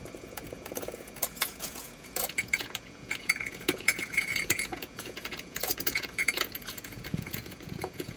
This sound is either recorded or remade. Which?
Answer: remade